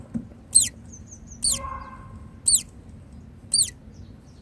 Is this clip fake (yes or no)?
no